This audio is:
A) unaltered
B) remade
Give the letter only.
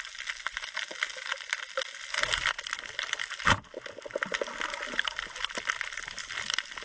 A